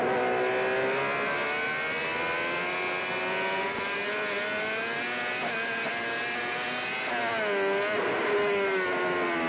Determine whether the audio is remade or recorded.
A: recorded